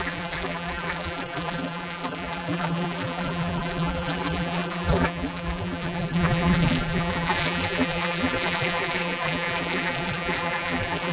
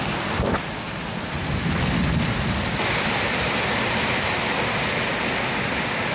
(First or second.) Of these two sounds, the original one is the second